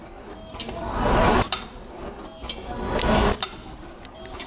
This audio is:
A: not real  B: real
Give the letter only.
B